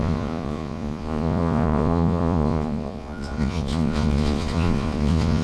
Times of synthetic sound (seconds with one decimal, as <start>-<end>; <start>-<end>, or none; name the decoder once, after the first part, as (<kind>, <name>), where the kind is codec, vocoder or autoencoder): 0.0-5.4 (vocoder, Vocos)

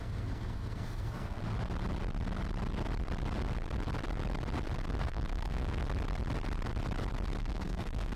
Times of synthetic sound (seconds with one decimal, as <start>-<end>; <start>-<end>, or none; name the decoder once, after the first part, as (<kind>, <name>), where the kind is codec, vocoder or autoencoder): 0.0-1.4 (codec, SNAC); 5.0-5.8; 7.4-8.2

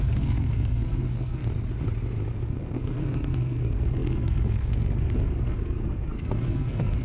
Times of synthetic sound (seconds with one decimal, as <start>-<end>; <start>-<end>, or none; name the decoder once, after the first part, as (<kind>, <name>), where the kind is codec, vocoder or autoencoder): 0.0-1.4 (codec, SNAC); 2.3-7.0

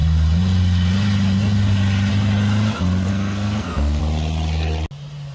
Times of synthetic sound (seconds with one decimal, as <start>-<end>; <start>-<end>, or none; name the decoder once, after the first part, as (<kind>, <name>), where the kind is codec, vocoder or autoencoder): 3.1-4.0 (codec, SNAC)

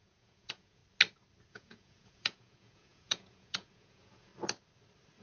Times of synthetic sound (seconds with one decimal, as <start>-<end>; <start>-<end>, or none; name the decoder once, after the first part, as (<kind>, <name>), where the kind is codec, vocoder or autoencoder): 0.0-0.8 (vocoder, Vocos); 1.5-4.3

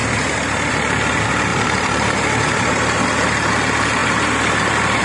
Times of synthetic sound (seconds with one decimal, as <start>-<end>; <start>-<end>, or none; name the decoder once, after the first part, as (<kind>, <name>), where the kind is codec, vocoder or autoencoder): 1.5-3.1 (vocoder, BigVGAN v2)

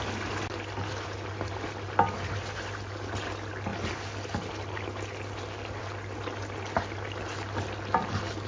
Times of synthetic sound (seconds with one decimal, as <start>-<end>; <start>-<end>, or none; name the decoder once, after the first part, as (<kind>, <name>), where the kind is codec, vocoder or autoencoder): none

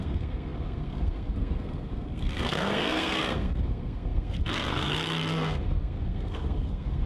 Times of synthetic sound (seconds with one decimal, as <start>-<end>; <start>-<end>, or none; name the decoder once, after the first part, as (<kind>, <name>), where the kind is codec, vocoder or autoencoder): 0.0-7.1 (codec, SNAC)